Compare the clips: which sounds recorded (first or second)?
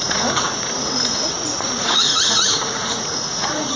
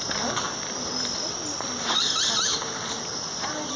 second